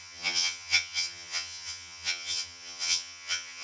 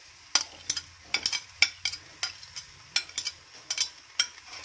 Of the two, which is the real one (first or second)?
second